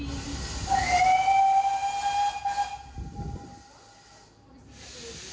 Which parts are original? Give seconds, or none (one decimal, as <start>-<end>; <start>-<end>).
0.0-5.3